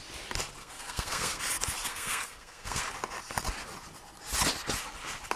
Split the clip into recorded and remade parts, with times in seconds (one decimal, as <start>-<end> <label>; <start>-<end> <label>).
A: 0.0-0.6 recorded; 0.6-1.4 remade; 1.4-1.9 recorded; 1.9-2.8 remade; 2.8-5.4 recorded